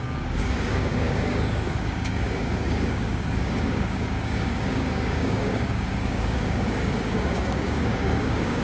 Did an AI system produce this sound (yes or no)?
yes